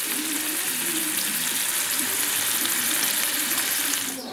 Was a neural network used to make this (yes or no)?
yes